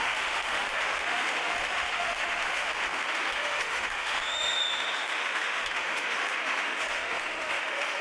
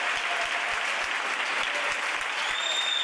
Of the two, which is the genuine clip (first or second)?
second